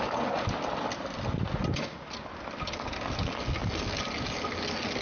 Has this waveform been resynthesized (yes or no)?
no